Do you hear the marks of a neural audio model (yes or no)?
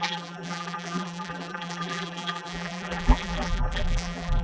yes